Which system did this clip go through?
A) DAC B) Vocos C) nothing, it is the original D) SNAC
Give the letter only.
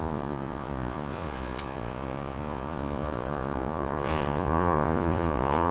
B